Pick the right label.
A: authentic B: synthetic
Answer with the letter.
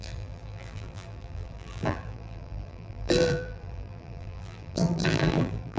B